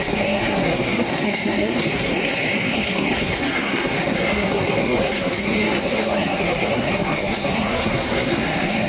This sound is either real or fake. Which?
fake